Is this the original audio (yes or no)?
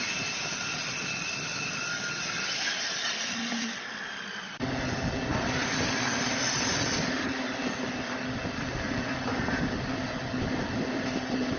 yes